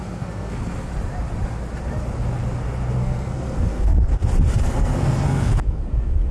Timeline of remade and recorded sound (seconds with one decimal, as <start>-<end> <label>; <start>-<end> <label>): 0.0-0.9 remade; 0.9-2.9 recorded; 2.9-4.1 remade; 4.1-4.6 recorded; 4.6-6.3 remade